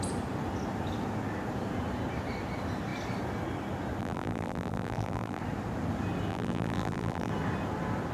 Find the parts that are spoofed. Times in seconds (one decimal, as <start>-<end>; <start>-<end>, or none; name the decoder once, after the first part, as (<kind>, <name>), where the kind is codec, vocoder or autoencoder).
4.0-5.4 (vocoder, BigVGAN v2); 6.3-7.3